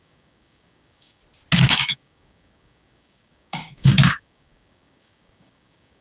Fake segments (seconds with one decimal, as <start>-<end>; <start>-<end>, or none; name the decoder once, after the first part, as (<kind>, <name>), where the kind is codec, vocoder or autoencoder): 0.0-1.2 (codec, DAC); 1.7-6.0